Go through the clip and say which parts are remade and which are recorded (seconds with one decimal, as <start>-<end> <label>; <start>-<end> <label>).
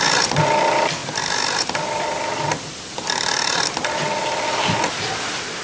0.0-5.6 recorded